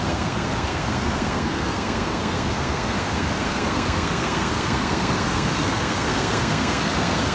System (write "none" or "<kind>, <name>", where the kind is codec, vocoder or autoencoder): codec, SNAC